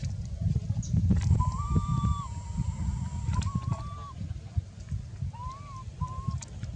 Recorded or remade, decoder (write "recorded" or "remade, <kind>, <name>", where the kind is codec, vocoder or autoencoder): recorded